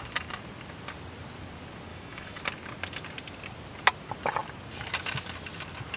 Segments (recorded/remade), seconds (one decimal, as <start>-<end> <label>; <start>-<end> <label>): 0.0-1.9 recorded; 1.9-2.4 remade; 2.4-6.0 recorded